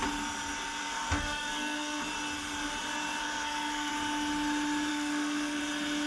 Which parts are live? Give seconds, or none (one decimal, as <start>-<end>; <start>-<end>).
0.0-0.8; 2.0-3.2; 3.9-4.9; 5.6-6.1